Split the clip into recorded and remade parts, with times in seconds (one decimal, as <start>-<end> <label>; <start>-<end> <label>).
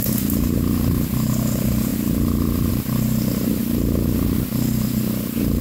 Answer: 0.0-5.6 recorded